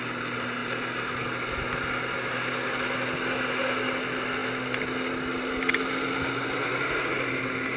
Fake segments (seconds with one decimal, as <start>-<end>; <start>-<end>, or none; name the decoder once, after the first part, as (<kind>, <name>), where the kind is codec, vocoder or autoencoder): none